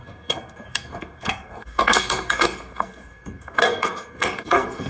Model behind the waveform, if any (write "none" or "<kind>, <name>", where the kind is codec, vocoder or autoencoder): codec, SNAC